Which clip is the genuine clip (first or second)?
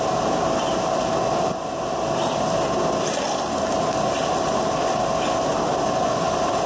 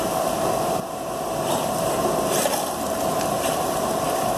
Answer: first